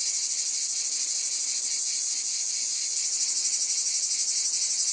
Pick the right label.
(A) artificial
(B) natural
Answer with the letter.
B